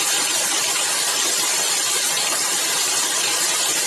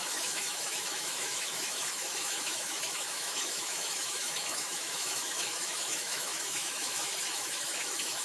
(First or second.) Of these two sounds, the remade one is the second